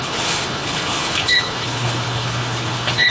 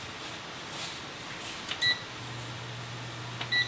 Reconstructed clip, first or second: first